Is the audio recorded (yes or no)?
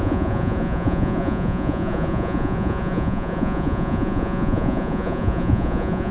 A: no